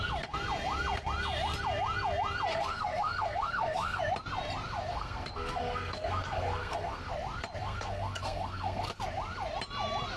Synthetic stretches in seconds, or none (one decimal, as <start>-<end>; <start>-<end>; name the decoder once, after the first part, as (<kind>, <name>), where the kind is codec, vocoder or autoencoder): 2.5-4.0 (codec, SNAC); 4.9-7.1; 7.6-8.9